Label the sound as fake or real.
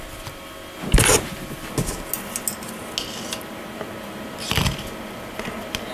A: real